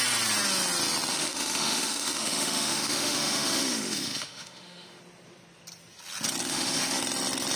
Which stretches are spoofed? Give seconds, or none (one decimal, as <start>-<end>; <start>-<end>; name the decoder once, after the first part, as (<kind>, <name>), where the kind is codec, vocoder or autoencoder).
1.1-5.0 (autoencoder, DAC-VAE); 6.5-7.0